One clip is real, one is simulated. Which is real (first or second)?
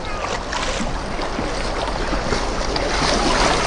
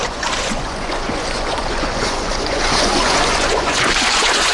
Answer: first